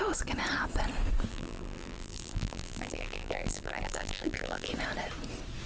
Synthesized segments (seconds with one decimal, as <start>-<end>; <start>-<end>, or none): 1.3-4.7